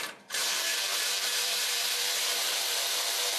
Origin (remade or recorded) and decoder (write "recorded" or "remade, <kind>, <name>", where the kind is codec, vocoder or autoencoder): remade, vocoder, BigVGAN v2